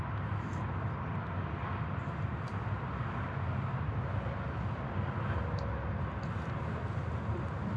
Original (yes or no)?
yes